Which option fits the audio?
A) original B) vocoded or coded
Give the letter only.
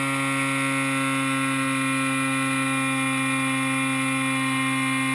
A